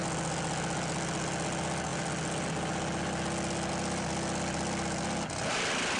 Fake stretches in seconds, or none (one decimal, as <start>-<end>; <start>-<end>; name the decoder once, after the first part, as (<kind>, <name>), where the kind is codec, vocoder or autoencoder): none